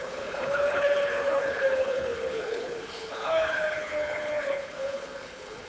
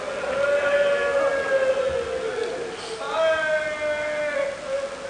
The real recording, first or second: second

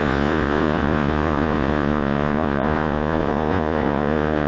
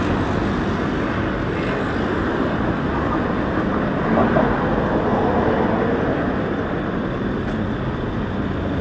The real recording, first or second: second